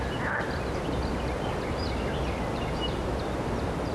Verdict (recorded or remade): recorded